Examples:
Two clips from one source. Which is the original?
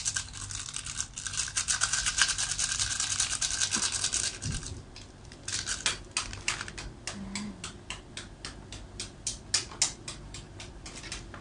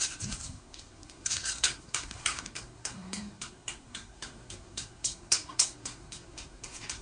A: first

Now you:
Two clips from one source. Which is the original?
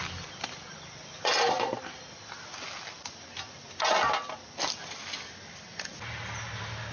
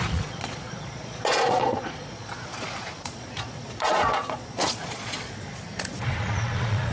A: first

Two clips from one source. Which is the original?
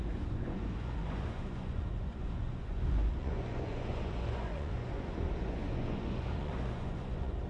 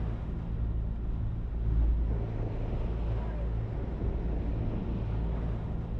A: second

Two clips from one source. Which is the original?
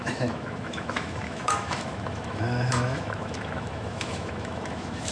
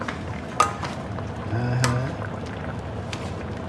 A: second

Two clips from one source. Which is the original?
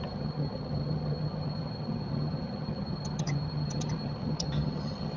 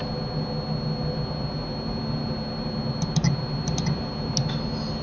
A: second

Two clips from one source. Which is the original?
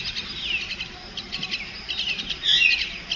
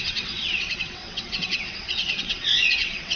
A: first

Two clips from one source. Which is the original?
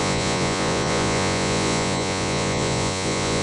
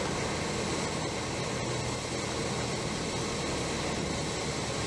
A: second